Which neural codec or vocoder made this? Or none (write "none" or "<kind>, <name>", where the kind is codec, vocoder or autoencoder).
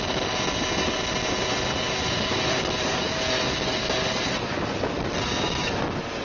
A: none